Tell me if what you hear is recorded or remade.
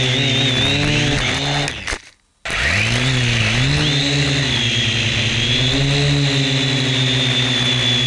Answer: recorded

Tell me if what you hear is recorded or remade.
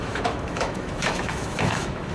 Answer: remade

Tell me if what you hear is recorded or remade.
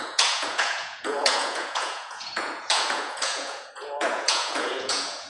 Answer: remade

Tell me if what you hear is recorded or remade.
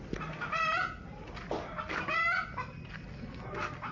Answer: recorded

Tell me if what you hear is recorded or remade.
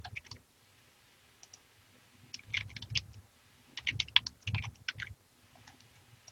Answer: recorded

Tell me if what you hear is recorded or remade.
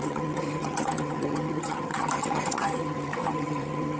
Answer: remade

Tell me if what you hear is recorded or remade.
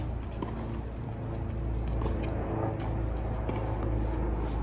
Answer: recorded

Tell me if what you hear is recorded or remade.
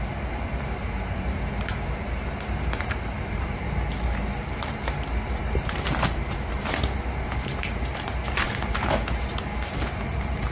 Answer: remade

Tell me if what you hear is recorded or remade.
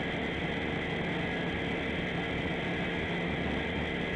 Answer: recorded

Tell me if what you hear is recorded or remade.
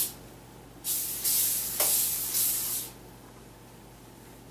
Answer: recorded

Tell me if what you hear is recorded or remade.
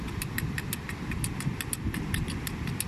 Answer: remade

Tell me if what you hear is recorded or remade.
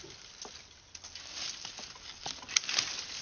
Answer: recorded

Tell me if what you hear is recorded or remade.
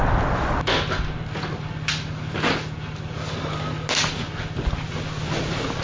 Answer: recorded